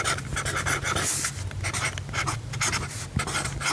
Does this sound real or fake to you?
real